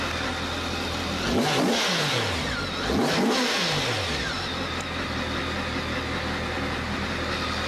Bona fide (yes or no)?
yes